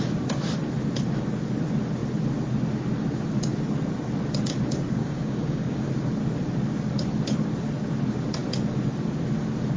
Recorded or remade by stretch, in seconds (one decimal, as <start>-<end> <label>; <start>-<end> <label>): 0.0-5.0 recorded; 5.0-5.9 remade; 5.9-9.8 recorded